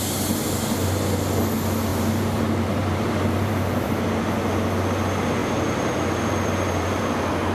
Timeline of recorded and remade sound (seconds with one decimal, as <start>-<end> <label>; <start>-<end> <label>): 0.0-1.9 recorded; 1.9-4.0 remade; 4.0-5.4 recorded; 5.4-7.0 remade; 7.0-7.5 recorded